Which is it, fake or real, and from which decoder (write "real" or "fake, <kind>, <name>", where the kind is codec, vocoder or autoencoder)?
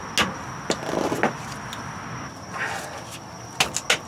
real